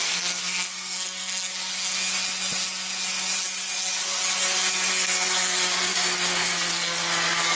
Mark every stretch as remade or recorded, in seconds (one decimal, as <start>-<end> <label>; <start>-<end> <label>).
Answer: 0.0-1.5 remade; 1.5-4.9 recorded; 4.9-7.5 remade